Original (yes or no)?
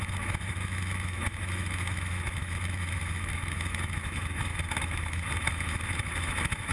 no